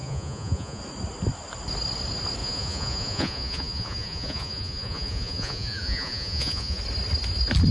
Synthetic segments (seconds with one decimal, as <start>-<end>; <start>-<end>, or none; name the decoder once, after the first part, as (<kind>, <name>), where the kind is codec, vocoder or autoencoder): 0.0-0.8 (vocoder, Vocos); 2.4-6.8